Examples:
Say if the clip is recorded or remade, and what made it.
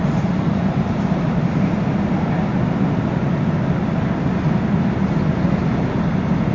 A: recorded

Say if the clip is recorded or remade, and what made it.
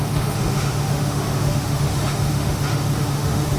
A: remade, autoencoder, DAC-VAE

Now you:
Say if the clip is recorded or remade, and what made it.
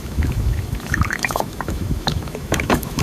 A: remade, autoencoder, DAC-VAE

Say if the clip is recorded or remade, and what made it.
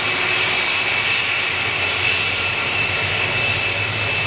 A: recorded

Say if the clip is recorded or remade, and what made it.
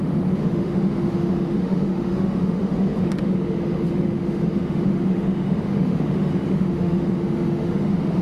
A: remade, autoencoder, DAC-VAE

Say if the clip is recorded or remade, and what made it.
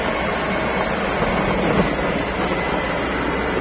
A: recorded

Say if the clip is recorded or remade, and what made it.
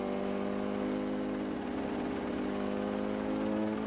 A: recorded